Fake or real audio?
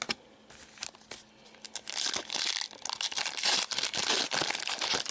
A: real